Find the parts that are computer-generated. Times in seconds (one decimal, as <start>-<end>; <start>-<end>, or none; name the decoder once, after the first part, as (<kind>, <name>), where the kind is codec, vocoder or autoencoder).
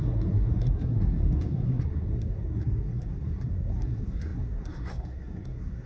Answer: 0.0-5.9 (codec, SNAC)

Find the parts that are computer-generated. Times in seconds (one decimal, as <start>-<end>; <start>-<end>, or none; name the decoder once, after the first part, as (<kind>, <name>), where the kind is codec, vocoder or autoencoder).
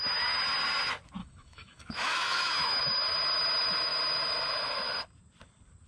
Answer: 1.2-2.8 (autoencoder, DAC-VAE)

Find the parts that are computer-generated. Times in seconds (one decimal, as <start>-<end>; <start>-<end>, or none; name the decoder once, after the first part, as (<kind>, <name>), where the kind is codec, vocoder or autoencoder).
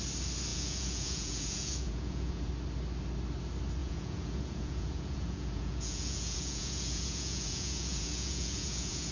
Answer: 0.5-2.5 (vocoder, Vocos); 3.8-9.1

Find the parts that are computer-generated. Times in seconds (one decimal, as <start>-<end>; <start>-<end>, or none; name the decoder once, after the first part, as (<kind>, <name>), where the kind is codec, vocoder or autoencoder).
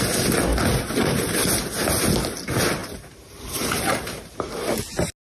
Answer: 0.5-1.5 (vocoder, BigVGAN v2); 2.8-4.5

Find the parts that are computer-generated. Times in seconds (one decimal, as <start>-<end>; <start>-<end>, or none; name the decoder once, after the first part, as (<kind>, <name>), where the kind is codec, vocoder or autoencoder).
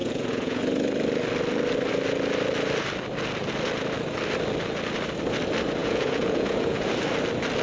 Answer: 0.0-0.6 (vocoder, Vocos); 5.8-6.9